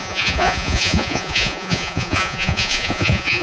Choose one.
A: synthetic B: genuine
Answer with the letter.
A